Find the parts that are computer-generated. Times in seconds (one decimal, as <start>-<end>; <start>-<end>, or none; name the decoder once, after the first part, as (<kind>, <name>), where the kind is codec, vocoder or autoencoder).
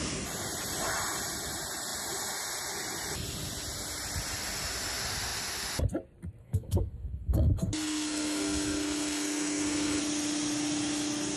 6.4-10.0 (codec, SNAC)